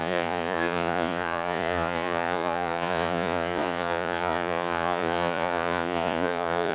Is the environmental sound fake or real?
fake